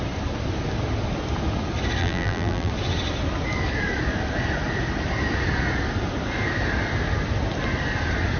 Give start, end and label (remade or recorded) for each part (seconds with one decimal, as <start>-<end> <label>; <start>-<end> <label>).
0.0-2.0 recorded; 2.0-2.7 remade; 2.7-8.4 recorded